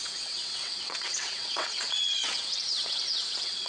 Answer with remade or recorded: remade